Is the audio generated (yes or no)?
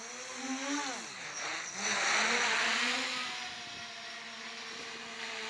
no